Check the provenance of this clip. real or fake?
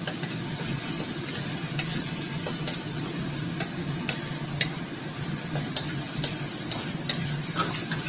real